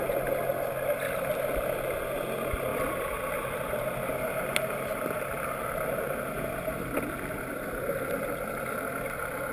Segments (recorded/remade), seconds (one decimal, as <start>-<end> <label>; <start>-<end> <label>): 0.0-2.7 recorded; 2.7-4.1 remade; 4.1-4.9 recorded; 4.9-5.7 remade; 5.7-6.7 recorded; 6.7-8.9 remade; 8.9-9.5 recorded